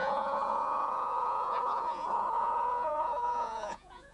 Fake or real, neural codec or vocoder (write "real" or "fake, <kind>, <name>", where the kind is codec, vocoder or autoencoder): fake, vocoder, Vocos